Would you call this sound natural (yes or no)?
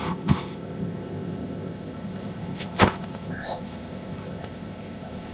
no